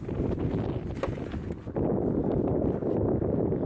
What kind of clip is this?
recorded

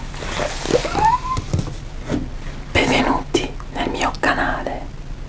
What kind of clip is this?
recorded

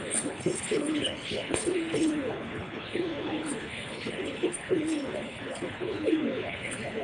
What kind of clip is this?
remade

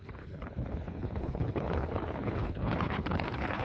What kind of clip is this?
remade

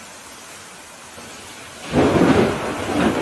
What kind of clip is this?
recorded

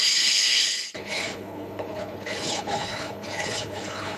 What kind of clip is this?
remade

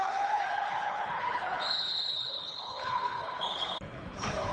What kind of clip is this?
remade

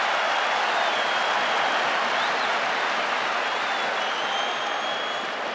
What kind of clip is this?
recorded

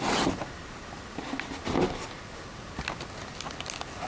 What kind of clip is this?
recorded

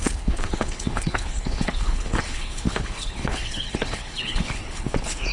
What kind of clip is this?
remade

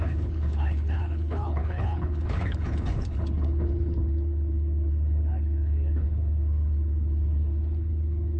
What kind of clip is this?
remade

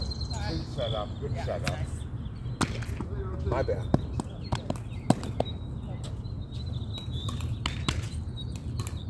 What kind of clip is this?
recorded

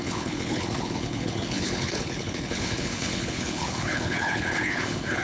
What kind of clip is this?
remade